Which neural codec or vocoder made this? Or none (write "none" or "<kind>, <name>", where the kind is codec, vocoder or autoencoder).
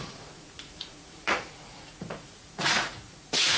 vocoder, Vocos